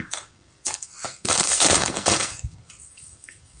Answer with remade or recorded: remade